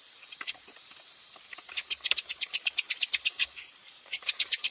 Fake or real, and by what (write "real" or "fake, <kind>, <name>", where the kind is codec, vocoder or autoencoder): fake, vocoder, BigVGAN v2